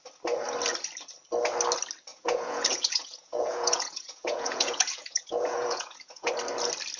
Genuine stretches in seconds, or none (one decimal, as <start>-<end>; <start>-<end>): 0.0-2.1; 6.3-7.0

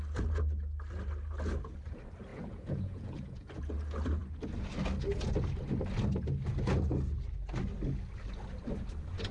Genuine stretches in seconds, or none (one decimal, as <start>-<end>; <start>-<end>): 0.0-2.3; 3.6-9.3

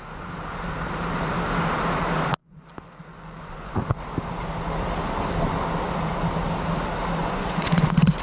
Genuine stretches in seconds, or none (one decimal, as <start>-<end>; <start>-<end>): 0.0-2.4; 4.0-7.2